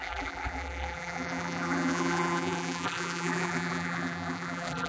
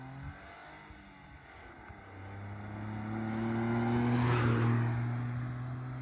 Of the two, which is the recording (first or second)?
second